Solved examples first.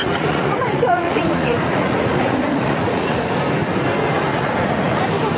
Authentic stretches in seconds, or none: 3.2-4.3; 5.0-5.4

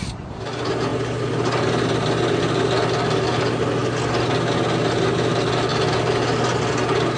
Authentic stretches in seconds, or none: 0.0-0.9; 2.4-7.2